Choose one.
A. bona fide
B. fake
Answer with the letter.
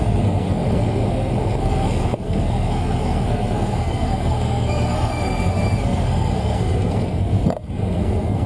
B